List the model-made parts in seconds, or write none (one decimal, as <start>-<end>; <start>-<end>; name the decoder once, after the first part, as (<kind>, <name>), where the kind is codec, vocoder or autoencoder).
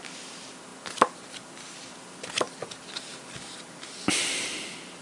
none